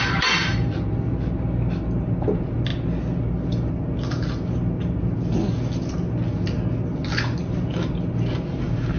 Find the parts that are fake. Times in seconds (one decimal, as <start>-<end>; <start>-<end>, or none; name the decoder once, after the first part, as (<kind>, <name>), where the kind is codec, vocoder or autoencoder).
none